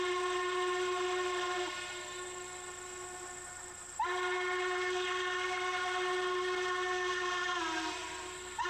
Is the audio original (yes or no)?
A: yes